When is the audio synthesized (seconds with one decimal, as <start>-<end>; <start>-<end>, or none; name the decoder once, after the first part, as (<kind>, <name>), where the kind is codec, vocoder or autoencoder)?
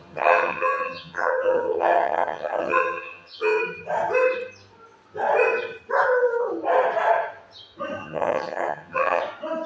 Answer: 0.0-3.6 (vocoder, HiFi-GAN); 8.0-9.2